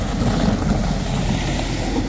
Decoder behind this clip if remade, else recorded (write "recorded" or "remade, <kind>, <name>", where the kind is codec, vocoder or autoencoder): recorded